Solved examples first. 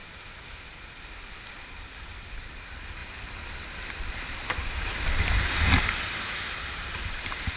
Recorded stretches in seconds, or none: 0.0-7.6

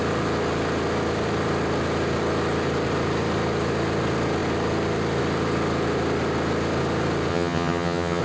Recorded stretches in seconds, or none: 0.0-7.3